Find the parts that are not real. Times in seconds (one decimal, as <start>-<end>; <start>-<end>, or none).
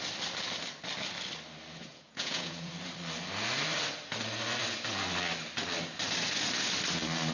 1.9-2.7